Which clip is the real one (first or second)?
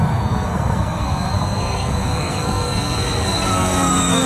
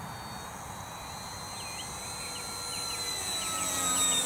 second